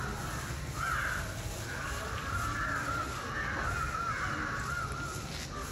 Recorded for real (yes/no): yes